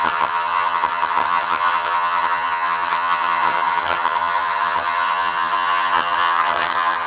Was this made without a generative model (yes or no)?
no